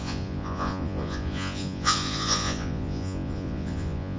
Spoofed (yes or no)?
yes